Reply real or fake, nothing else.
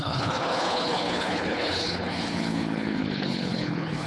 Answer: fake